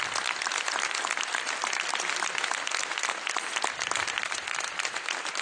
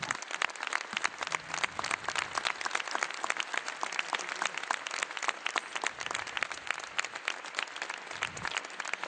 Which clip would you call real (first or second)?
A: second